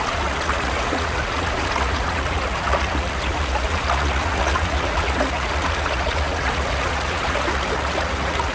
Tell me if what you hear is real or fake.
fake